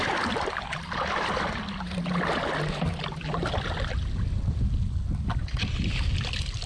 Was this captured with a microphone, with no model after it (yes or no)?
yes